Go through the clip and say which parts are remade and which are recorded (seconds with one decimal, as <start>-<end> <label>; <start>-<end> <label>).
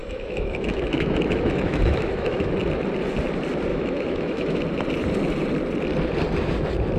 0.0-2.5 remade; 2.5-3.7 recorded; 3.7-4.6 remade; 4.6-7.0 recorded